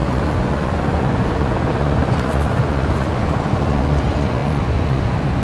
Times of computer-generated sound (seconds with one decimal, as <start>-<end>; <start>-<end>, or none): 0.0-5.4